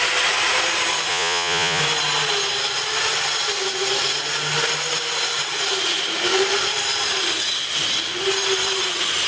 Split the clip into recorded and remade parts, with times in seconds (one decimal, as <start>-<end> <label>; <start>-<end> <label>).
0.0-1.1 recorded; 1.1-1.8 remade; 1.8-9.3 recorded